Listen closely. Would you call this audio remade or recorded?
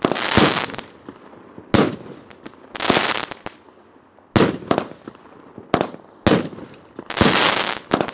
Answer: recorded